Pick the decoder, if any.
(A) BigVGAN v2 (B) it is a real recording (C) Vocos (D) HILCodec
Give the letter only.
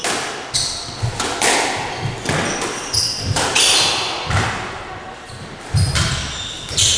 B